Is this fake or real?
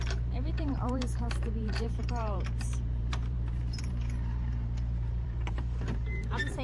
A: fake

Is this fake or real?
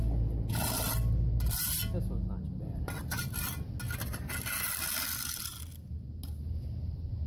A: real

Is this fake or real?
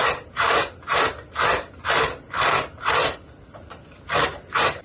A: real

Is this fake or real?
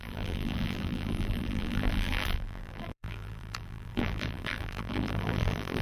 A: fake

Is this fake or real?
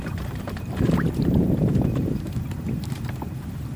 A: fake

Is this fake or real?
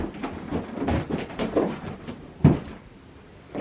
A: real